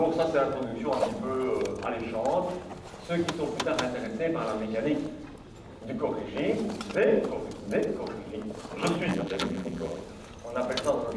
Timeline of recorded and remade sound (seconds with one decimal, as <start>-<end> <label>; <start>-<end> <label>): 0.0-9.1 recorded; 9.1-10.0 remade; 10.0-11.2 recorded

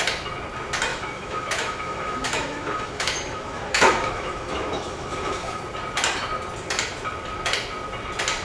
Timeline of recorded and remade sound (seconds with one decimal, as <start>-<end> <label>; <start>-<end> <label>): 0.0-0.9 recorded; 0.9-5.6 remade; 5.6-8.4 recorded

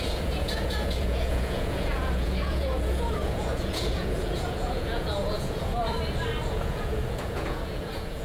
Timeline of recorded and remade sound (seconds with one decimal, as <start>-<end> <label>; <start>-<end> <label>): 0.0-5.8 remade; 5.8-6.5 recorded; 6.5-8.2 remade